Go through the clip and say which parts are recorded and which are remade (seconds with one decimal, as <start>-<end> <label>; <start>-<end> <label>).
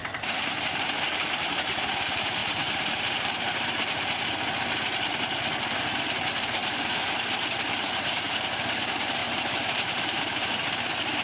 0.0-2.0 remade; 2.0-9.2 recorded; 9.2-10.5 remade; 10.5-11.2 recorded